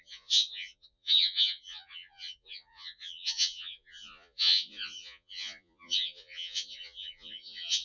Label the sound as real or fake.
fake